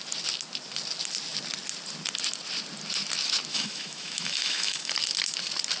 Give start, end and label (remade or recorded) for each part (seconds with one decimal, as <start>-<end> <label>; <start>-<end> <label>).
0.0-3.5 recorded; 3.5-4.9 remade; 4.9-5.8 recorded